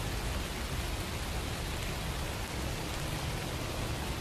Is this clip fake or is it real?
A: real